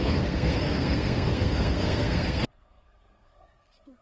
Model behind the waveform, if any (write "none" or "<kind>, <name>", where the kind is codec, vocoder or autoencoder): codec, SNAC